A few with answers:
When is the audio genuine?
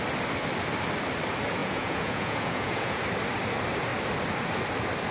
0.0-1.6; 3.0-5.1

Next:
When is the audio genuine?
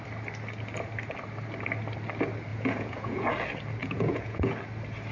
0.0-2.5; 3.3-3.8; 4.5-5.1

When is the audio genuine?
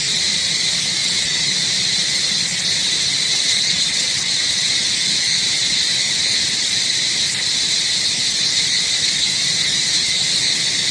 0.0-1.0; 1.5-3.3; 4.7-10.9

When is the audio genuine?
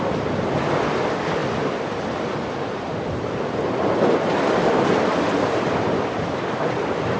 none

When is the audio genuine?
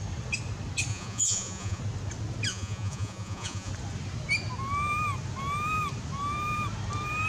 0.0-0.9; 1.8-2.5; 3.7-7.3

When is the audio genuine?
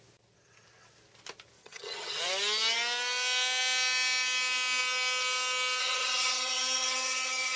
0.0-1.6; 2.2-5.8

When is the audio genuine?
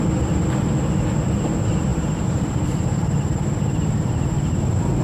0.0-1.9